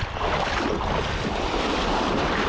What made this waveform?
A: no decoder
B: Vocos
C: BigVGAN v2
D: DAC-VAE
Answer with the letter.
A